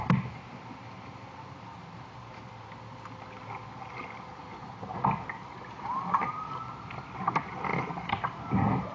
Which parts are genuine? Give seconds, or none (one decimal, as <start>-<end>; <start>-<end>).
0.0-7.7; 8.4-8.9

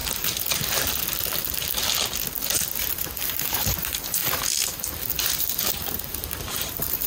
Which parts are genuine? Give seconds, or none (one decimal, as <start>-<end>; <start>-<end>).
0.0-2.8; 4.2-5.2

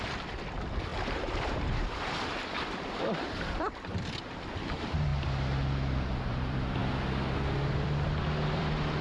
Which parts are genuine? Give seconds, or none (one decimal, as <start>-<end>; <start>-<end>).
5.1-6.3; 6.8-7.7

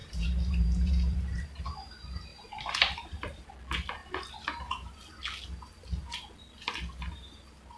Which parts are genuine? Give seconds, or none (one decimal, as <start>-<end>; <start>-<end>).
1.9-2.3; 3.5-7.8

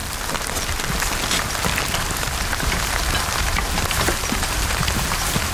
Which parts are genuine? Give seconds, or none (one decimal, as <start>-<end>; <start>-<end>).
0.0-2.4